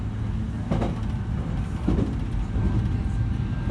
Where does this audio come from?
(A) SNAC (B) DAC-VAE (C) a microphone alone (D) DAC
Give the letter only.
C